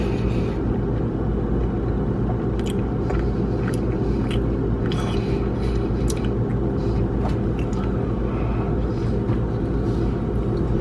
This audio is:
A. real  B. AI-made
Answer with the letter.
A